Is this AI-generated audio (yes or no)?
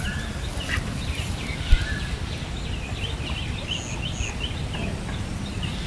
no